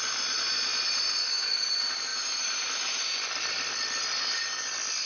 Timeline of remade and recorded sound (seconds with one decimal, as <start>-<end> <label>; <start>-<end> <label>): 0.0-1.2 recorded; 1.2-1.7 remade; 1.7-5.1 recorded